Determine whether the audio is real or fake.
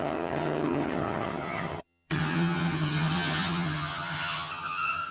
fake